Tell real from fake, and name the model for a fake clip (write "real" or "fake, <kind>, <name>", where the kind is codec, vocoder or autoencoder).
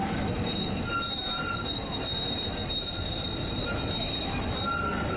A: real